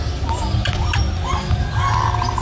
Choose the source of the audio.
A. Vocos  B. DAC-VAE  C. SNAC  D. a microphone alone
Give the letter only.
D